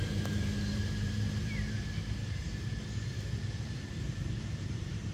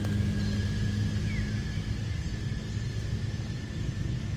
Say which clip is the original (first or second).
second